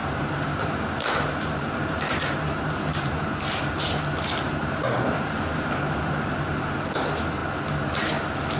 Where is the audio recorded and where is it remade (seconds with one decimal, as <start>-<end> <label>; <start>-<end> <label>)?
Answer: 0.0-2.2 remade; 2.2-2.9 recorded; 2.9-4.0 remade; 4.0-4.6 recorded; 4.6-6.5 remade; 6.5-8.6 recorded